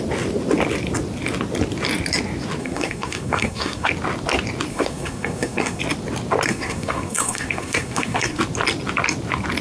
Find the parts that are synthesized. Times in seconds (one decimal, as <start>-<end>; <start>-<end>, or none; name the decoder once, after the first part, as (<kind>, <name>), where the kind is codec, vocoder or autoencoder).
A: 2.6-3.9 (codec, SNAC); 4.7-5.8; 6.5-8.4